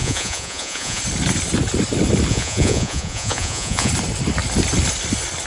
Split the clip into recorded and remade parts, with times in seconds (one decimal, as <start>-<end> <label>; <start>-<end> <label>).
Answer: 0.0-1.0 remade; 1.0-2.3 recorded; 2.3-3.9 remade; 3.9-5.5 recorded